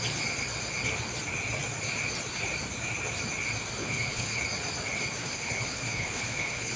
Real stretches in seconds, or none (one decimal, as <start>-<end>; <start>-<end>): 0.0-3.8; 4.4-5.2